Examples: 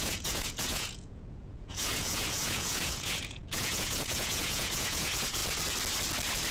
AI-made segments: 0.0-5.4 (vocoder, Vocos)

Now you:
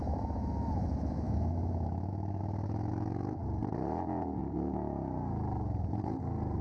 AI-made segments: 0.0-3.4 (autoencoder, DAC-VAE)

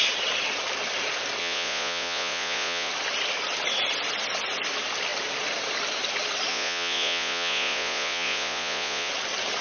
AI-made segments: 1.4-2.9 (vocoder, Vocos); 6.5-9.1

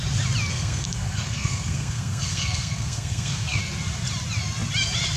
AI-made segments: 0.5-3.6 (codec, SNAC)

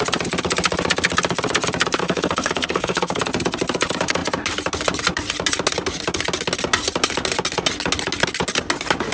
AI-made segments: 2.0-3.2 (codec, SNAC)

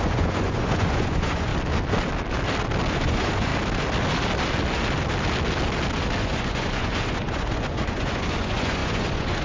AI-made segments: 0.0-1.5 (vocoder, Vocos); 2.9-3.5; 6.2-9.4